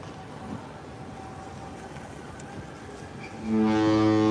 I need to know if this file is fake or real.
real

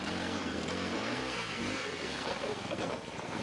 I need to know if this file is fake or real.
fake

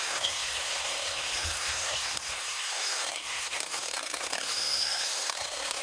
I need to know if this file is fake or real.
fake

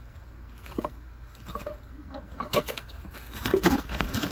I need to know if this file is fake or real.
fake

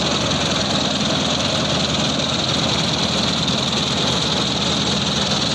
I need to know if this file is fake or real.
real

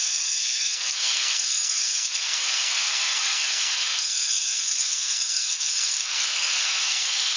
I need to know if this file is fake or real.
fake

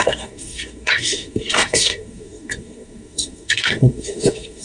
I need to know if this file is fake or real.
fake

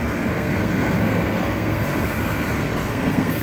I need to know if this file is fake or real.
fake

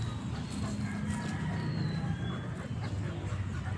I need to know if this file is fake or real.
real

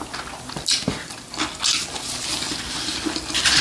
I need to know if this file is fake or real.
real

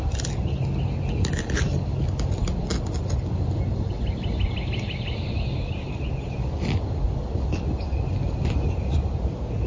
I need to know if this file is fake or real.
real